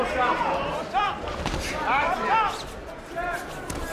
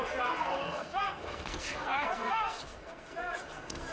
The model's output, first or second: second